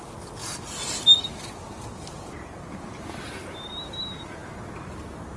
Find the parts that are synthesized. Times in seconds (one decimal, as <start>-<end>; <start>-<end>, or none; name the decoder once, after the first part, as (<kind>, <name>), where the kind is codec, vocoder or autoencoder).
none